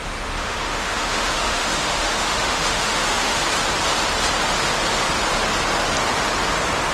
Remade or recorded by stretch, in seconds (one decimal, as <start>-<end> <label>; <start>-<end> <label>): 0.0-3.4 remade; 3.4-6.9 recorded